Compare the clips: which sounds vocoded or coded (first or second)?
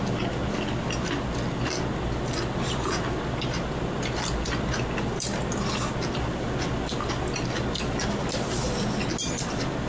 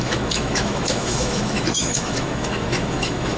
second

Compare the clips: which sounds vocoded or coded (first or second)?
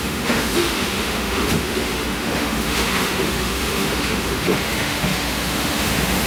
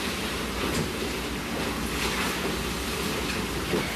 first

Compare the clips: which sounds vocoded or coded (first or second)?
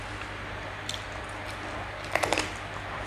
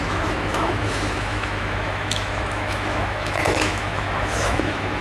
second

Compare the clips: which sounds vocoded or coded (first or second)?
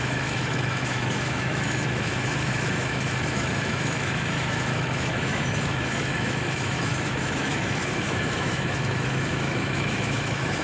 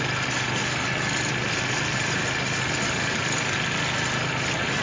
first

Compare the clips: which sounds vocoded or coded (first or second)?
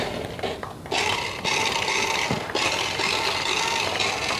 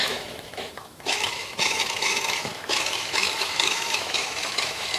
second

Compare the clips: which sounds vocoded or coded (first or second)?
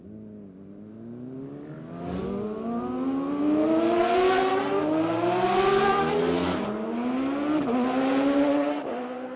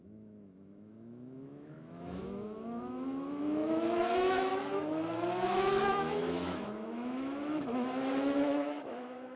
second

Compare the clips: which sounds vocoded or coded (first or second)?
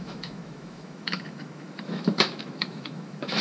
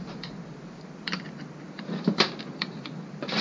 first